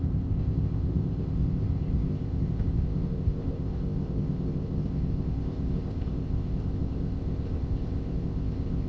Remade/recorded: remade